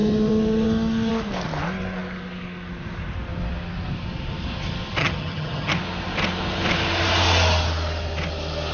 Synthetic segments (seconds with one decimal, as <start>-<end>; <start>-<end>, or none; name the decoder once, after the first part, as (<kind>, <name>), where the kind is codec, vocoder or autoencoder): 5.0-5.7 (vocoder, HiFi-GAN)